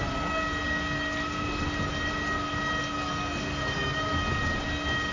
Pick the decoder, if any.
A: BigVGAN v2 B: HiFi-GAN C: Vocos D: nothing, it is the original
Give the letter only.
D